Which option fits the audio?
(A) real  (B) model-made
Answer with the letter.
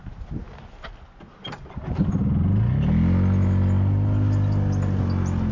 A